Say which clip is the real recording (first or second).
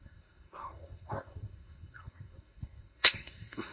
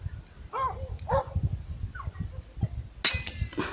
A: second